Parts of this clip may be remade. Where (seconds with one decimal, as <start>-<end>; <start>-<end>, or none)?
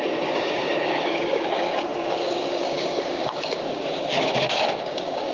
0.0-5.3